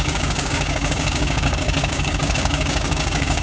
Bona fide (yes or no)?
no